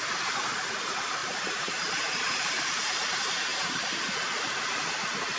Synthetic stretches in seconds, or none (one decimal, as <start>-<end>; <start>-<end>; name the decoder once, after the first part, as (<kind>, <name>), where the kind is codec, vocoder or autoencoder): 1.2-2.7 (vocoder, BigVGAN v2); 3.5-4.0